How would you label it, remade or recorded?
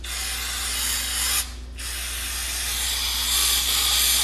recorded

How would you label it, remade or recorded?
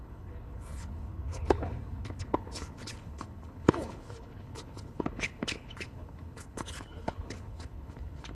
remade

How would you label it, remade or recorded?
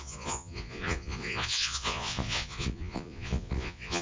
remade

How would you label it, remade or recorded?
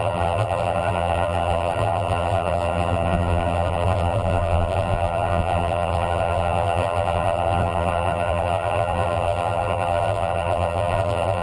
remade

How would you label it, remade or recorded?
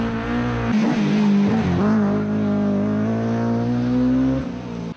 recorded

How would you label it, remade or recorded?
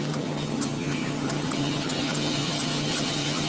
remade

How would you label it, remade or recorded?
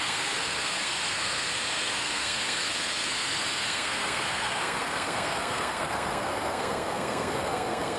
remade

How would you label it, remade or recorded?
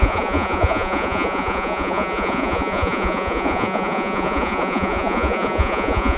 remade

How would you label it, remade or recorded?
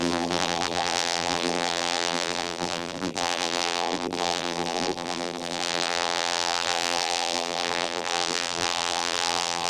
remade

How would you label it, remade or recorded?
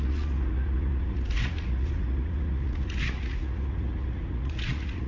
remade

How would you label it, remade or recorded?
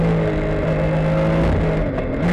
recorded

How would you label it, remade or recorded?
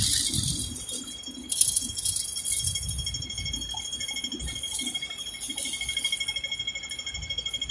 recorded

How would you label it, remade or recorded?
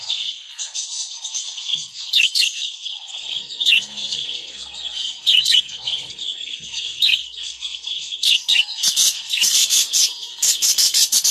remade